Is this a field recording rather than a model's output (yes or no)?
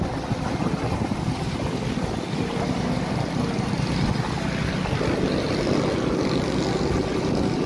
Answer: yes